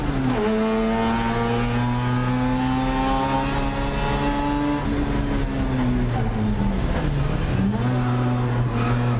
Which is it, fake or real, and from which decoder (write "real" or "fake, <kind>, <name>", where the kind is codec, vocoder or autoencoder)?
real